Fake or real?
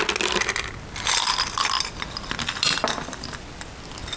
real